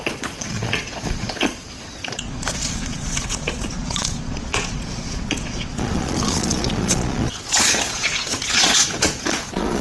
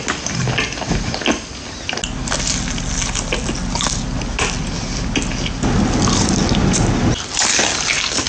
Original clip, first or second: second